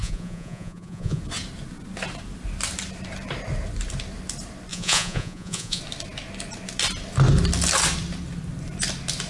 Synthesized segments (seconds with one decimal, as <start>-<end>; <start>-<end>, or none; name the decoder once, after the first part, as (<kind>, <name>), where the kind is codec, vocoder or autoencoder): 0.0-1.2 (vocoder, Vocos); 4.7-5.8